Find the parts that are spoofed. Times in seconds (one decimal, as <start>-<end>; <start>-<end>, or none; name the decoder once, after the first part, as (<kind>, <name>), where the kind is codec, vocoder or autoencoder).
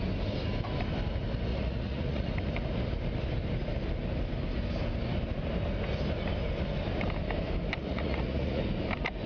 1.5-2.3 (vocoder, Vocos); 7.8-8.6